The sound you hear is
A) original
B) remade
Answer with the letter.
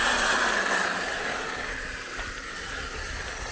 A